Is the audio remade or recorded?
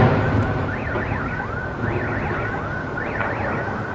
recorded